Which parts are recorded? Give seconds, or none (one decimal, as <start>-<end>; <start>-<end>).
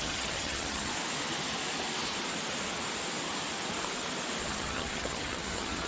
0.9-4.4